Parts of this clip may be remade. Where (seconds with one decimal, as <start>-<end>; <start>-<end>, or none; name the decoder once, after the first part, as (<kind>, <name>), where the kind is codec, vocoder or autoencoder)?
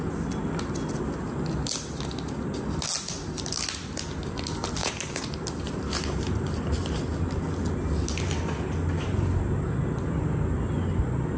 4.8-6.4 (vocoder, BigVGAN v2)